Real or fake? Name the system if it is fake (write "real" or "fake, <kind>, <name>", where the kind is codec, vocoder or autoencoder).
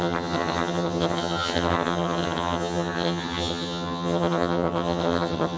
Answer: fake, vocoder, HiFi-GAN